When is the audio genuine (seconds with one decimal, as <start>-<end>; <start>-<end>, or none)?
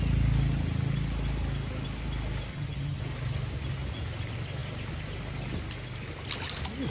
0.0-2.5; 3.0-6.9